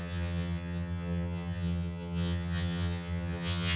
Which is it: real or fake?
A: fake